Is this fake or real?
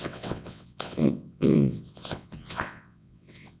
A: fake